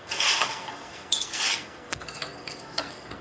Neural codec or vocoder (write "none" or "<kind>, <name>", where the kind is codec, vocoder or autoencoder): codec, SNAC